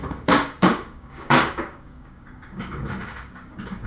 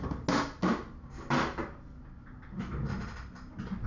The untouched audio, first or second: second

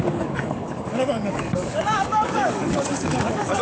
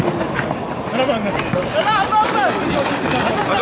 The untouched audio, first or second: second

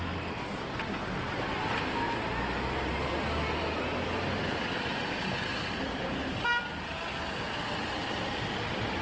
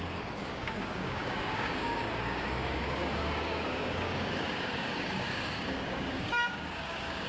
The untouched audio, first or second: first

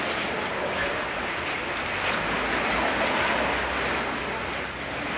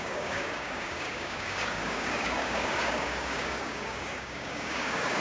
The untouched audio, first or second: first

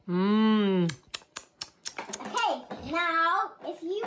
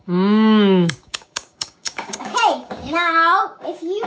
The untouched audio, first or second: first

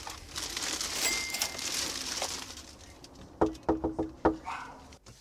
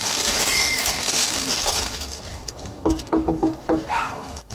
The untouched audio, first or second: first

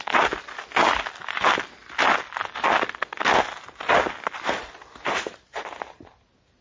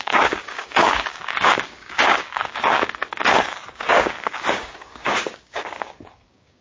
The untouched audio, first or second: first